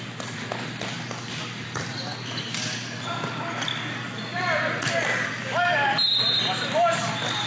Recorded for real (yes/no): yes